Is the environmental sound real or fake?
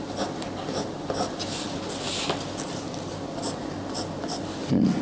real